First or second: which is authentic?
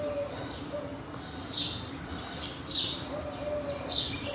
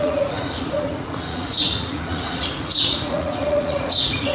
first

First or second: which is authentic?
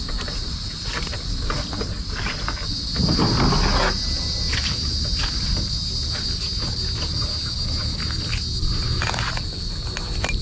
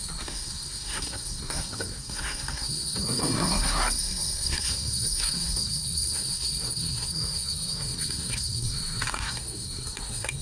first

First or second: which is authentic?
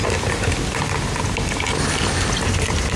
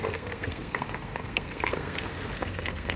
first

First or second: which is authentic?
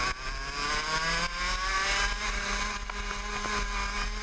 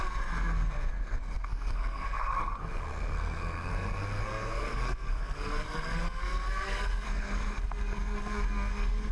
first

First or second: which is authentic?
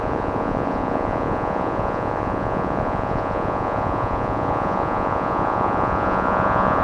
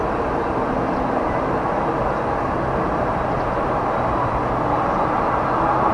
second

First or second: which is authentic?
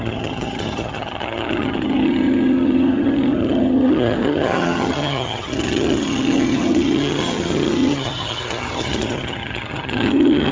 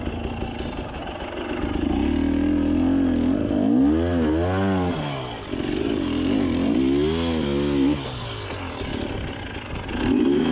second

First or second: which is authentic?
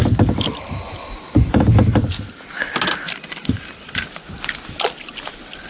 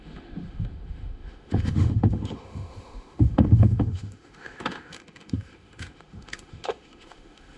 first